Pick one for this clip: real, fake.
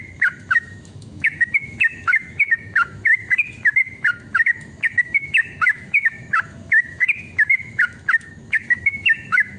fake